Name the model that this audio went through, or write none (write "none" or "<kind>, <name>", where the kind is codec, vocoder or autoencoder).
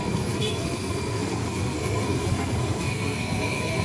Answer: codec, SNAC